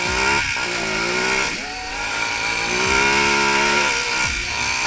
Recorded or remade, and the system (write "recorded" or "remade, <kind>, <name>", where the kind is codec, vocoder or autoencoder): recorded